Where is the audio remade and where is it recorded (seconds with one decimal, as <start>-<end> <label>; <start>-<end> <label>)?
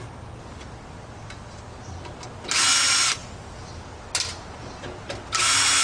0.0-5.8 recorded